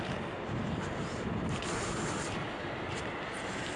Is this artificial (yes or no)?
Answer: no